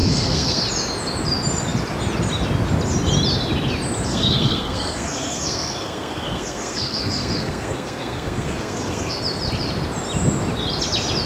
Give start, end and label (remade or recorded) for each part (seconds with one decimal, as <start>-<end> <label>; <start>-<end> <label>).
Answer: 0.0-0.6 remade; 0.6-4.1 recorded; 4.1-9.2 remade; 9.2-11.3 recorded